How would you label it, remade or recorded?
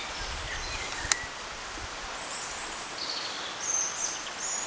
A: recorded